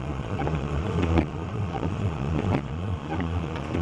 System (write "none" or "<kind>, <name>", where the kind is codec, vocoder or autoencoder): vocoder, Vocos